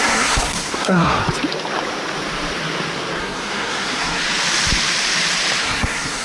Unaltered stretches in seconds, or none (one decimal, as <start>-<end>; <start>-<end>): 1.2-3.2; 4.2-5.6